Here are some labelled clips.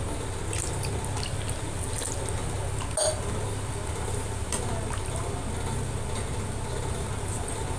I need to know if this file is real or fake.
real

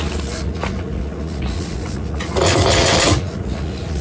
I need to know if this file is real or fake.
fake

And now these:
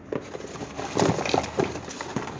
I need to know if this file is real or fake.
real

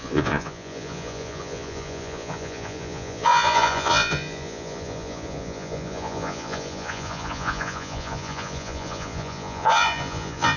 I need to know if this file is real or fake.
fake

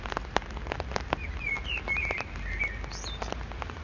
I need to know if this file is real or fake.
real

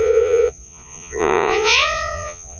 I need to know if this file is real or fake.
fake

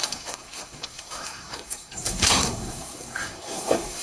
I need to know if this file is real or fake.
fake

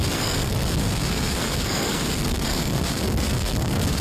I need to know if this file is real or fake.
fake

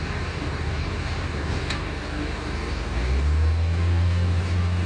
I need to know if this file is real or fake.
fake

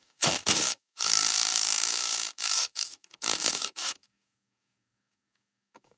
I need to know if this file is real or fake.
fake